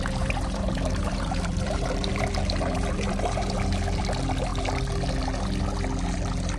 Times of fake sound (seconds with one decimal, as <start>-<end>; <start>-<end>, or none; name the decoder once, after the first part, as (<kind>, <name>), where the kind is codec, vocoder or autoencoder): 0.0-4.0 (vocoder, BigVGAN v2)

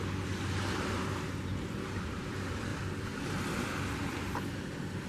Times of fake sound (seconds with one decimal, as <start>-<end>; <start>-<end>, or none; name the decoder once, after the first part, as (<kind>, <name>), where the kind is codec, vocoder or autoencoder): 1.0-2.2 (vocoder, BigVGAN v2); 2.7-3.4

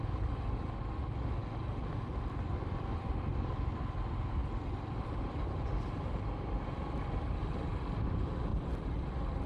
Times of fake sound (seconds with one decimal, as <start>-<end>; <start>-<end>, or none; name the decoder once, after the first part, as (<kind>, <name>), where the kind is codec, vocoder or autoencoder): 4.4-7.0 (vocoder, BigVGAN v2); 8.5-9.5

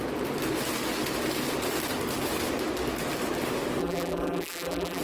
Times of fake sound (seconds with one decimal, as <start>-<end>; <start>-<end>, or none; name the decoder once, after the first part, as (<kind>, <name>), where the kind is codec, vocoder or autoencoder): 3.8-5.0 (vocoder, BigVGAN v2)

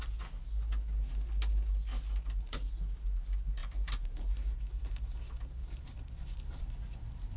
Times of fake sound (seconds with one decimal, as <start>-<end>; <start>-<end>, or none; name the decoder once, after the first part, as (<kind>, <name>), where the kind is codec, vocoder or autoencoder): 3.6-4.8 (vocoder, BigVGAN v2); 5.6-6.6